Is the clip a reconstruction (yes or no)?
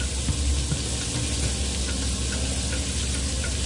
no